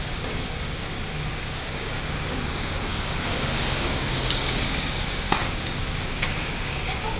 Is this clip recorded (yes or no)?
no